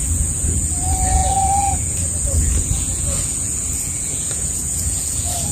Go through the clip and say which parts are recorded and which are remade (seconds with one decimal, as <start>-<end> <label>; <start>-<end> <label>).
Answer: 0.0-5.5 remade